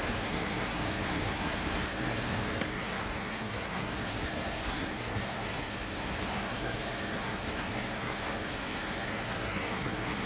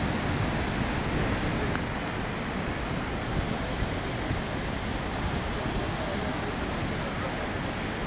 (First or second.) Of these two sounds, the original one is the second